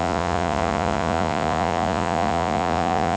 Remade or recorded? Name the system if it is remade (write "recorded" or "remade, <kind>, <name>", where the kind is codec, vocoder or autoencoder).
remade, vocoder, Vocos